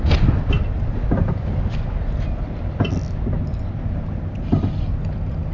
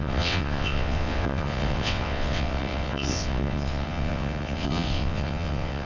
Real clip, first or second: first